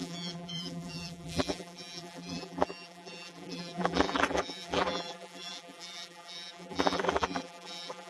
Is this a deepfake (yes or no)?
yes